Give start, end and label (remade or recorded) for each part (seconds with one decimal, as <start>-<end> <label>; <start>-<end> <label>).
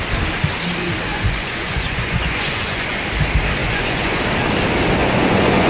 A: 0.0-1.1 recorded; 1.1-3.0 remade; 3.0-3.6 recorded; 3.6-4.2 remade; 4.2-5.0 recorded; 5.0-5.7 remade